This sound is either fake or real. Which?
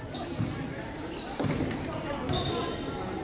real